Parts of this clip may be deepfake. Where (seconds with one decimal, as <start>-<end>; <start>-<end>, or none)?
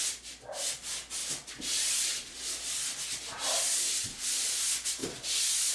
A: none